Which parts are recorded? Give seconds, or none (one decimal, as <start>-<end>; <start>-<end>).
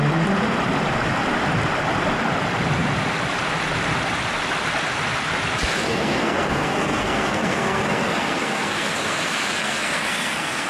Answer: 0.0-5.9